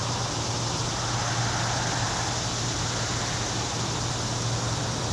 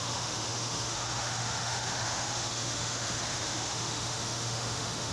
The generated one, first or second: second